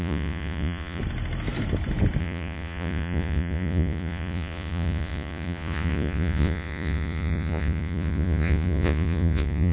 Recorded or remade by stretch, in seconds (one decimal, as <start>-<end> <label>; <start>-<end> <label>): 0.0-1.0 remade; 1.0-2.2 recorded; 2.2-9.7 remade